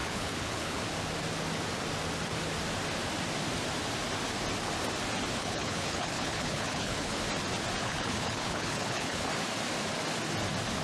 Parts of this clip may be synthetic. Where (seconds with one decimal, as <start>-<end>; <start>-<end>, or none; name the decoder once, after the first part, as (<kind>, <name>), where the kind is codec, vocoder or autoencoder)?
0.0-0.8 (codec, HILCodec); 5.4-7.2; 7.8-9.3